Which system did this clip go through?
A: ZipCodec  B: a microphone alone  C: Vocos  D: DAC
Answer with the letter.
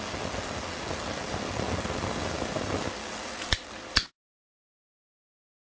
B